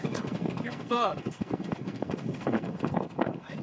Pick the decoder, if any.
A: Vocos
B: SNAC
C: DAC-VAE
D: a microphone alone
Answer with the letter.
B